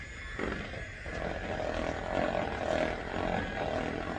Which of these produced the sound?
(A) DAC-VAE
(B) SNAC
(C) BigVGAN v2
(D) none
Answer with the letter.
D